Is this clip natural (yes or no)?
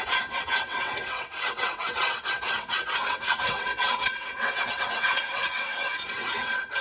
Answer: no